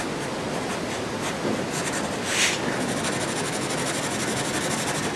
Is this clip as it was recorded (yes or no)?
yes